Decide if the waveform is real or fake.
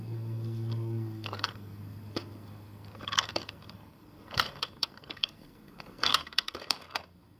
fake